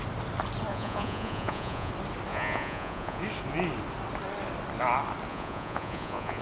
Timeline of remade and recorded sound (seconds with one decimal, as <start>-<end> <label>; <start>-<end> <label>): 0.0-0.7 recorded; 0.7-1.9 remade; 1.9-2.3 recorded; 2.3-3.2 remade; 3.2-5.3 recorded; 5.3-6.4 remade